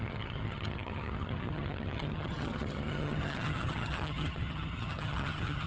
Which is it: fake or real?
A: fake